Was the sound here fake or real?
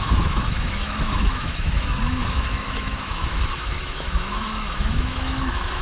fake